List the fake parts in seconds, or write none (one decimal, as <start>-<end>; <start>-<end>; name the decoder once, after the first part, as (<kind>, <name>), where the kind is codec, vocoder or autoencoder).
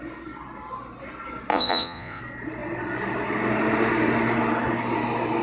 1.5-2.2 (vocoder, Vocos)